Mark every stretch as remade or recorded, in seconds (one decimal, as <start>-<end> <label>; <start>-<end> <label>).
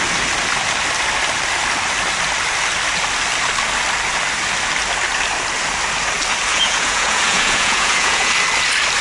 0.0-6.5 recorded; 6.5-8.3 remade; 8.3-9.0 recorded